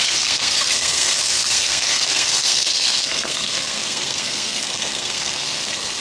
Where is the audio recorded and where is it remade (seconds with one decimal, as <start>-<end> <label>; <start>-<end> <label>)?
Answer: 0.0-6.0 remade